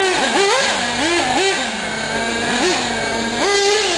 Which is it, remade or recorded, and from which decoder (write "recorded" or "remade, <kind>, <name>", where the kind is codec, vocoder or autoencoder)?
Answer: recorded